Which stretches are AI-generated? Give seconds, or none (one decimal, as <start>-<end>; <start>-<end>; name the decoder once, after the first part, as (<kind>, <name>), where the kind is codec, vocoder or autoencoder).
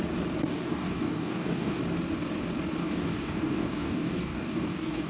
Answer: 0.5-1.8 (codec, DAC); 2.8-5.1